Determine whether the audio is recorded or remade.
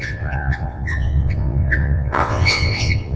remade